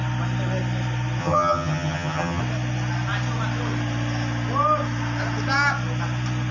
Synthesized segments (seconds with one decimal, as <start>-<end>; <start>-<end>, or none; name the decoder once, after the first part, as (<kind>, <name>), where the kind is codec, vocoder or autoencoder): 1.2-2.4 (vocoder, HiFi-GAN)

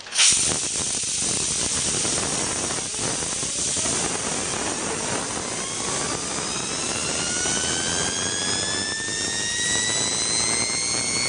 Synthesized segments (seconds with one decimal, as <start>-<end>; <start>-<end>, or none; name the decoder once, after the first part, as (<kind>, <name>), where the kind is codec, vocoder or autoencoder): none

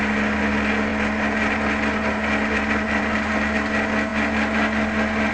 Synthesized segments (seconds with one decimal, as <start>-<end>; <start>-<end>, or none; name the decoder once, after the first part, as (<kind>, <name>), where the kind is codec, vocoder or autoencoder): none

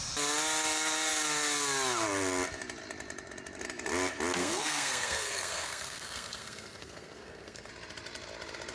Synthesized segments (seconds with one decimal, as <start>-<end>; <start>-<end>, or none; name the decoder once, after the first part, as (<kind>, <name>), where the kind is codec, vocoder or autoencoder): 4.4-7.7 (codec, SNAC)

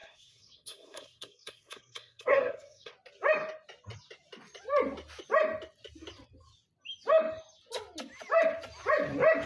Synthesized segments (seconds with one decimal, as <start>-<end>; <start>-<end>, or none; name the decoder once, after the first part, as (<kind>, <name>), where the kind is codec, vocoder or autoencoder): 0.0-2.9 (codec, SNAC)

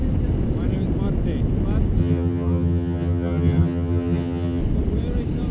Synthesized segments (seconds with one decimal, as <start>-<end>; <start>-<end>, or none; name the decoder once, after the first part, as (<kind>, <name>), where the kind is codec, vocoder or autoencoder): 2.0-4.6 (vocoder, HiFi-GAN)

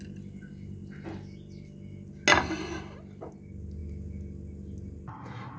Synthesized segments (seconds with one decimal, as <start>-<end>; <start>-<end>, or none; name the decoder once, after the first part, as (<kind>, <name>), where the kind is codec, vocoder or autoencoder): none

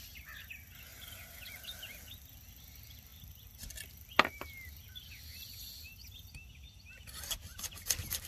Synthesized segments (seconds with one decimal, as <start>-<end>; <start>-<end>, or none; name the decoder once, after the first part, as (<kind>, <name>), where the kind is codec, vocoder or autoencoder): none